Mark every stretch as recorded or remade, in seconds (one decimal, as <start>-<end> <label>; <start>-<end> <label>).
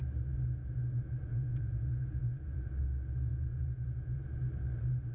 0.0-1.3 recorded; 1.3-2.7 remade; 2.7-3.3 recorded; 3.3-4.2 remade; 4.2-5.1 recorded